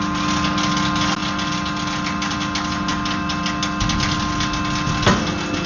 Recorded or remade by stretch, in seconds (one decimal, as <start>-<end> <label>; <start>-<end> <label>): 0.0-5.7 recorded